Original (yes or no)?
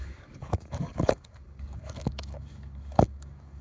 no